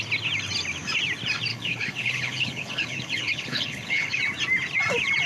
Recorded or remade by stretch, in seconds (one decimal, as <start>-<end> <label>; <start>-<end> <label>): 0.0-1.5 recorded; 1.5-4.2 remade; 4.2-5.3 recorded